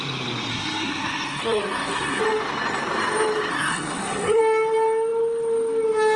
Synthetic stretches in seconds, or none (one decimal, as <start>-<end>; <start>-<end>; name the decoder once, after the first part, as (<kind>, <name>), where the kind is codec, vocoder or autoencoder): 0.5-2.2 (codec, SNAC); 3.5-4.4